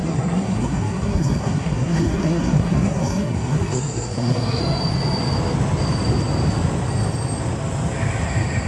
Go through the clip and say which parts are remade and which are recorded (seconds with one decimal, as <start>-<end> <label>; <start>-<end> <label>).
0.0-4.6 remade; 4.6-8.7 recorded